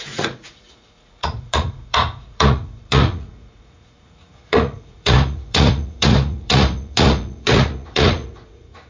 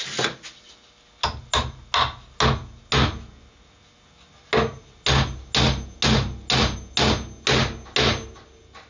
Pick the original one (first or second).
second